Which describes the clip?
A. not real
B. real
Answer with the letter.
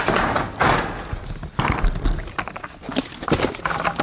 B